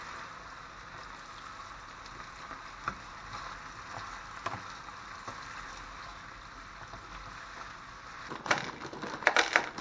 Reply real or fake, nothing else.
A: real